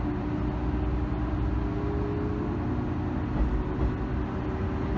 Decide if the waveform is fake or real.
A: real